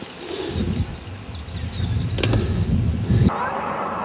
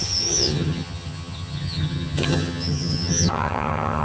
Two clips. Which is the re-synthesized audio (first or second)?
second